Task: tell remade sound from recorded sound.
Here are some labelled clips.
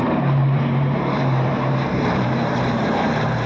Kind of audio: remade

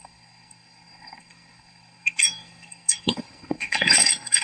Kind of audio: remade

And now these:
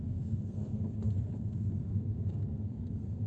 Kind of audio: remade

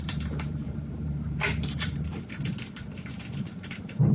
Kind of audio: remade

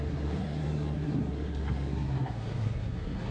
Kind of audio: remade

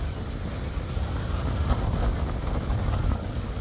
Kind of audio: recorded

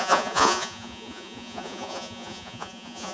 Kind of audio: remade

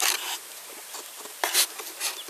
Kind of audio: recorded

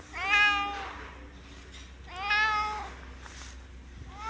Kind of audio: recorded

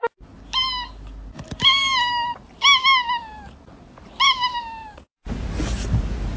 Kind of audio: recorded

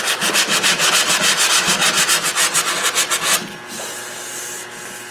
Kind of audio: recorded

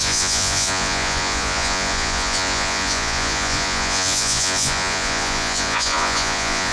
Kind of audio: remade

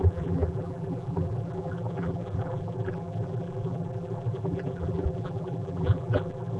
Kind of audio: remade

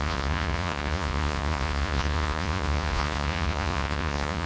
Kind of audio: remade